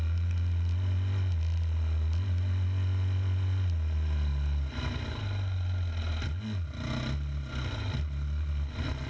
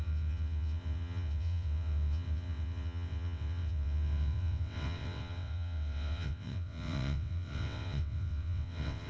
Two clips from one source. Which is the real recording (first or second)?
first